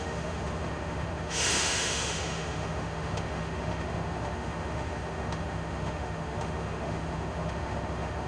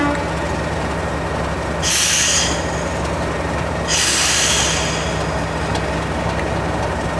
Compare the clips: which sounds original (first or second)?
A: second